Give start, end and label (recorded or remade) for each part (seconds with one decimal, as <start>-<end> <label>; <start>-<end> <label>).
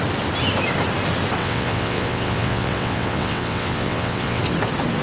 0.0-1.4 recorded; 1.4-4.4 remade; 4.4-5.0 recorded